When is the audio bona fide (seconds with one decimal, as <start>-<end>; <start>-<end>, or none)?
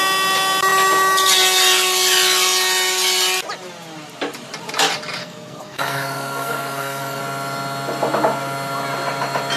0.0-5.2; 7.2-9.6